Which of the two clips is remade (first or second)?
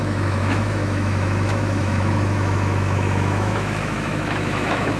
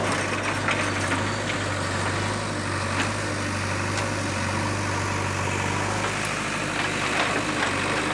first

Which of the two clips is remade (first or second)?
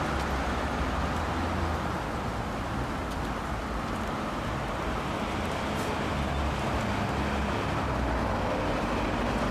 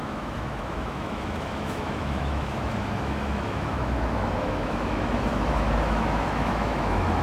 second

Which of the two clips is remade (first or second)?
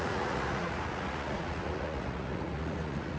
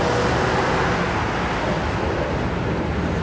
first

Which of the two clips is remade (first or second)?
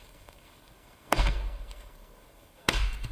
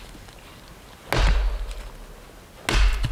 first